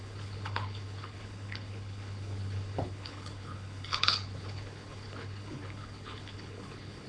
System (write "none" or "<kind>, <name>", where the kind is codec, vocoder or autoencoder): codec, HILCodec